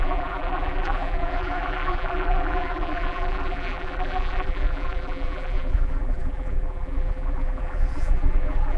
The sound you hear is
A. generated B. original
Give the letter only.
A